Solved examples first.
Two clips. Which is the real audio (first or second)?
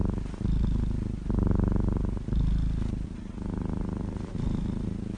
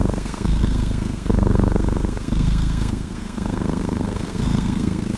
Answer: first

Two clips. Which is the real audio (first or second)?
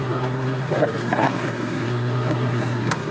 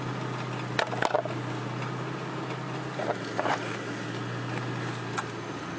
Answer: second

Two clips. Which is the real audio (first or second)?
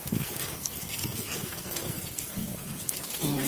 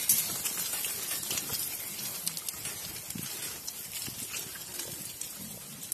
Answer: second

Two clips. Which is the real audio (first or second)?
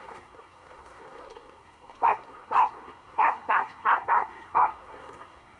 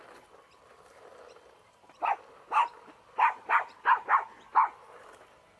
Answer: second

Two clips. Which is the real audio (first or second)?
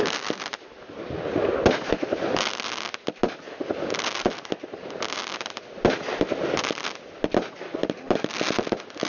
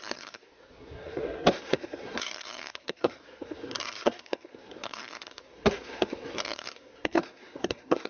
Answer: first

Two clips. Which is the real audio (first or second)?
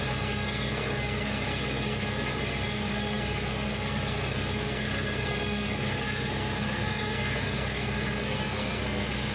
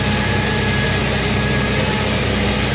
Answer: second